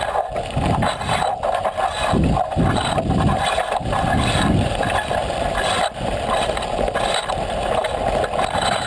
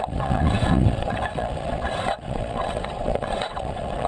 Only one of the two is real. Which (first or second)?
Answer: first